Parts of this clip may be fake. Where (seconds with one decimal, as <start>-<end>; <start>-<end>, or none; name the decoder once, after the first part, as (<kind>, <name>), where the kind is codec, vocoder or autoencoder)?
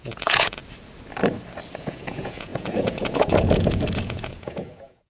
0.0-0.6 (vocoder, Vocos); 1.8-5.1